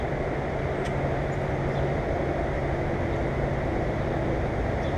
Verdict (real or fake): real